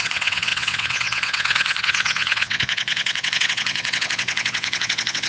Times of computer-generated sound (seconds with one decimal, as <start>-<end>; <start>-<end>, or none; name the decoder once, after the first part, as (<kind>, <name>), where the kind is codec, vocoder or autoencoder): 0.0-5.3 (vocoder, WaveNeXt)